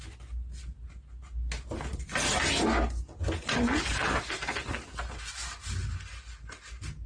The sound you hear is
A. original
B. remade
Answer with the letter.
A